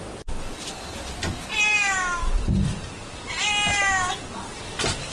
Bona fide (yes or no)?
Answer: yes